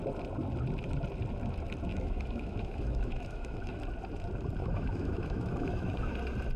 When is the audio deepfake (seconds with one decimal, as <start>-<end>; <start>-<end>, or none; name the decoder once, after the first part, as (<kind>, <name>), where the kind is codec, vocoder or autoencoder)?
1.9-3.8 (autoencoder, DAC-VAE); 4.6-6.1